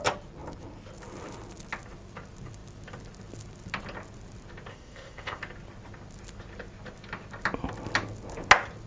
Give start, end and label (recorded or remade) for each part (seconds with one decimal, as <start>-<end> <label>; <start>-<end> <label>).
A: 0.0-4.7 recorded; 4.7-5.4 remade; 5.4-8.9 recorded